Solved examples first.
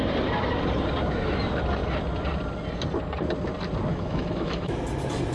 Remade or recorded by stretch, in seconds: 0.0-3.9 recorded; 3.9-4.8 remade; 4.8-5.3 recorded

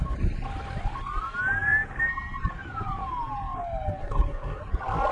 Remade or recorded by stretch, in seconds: 0.0-4.0 recorded; 4.0-4.6 remade; 4.6-5.1 recorded

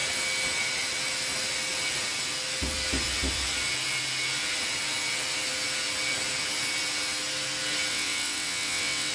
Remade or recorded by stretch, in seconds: 0.0-7.9 recorded; 7.9-9.1 remade

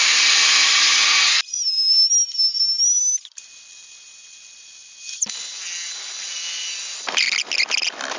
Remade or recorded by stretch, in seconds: 0.0-8.2 recorded

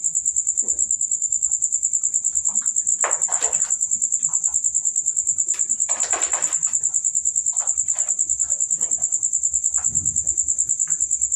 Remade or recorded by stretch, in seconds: 0.0-0.8 recorded; 0.8-1.5 remade; 1.5-11.4 recorded

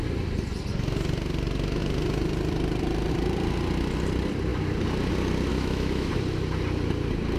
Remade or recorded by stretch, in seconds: 0.0-5.5 recorded; 5.5-6.1 remade; 6.1-7.4 recorded

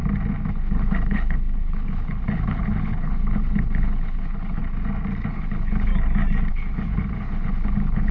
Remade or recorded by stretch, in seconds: 0.0-0.5 recorded; 0.5-4.6 remade; 4.6-5.3 recorded; 5.3-5.9 remade; 5.9-6.5 recorded; 6.5-8.1 remade

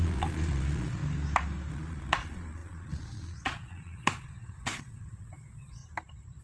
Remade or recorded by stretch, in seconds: 0.0-1.0 remade; 1.0-1.7 recorded; 1.7-5.8 remade; 5.8-6.4 recorded